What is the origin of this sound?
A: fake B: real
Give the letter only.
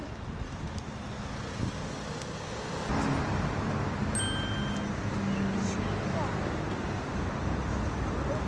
B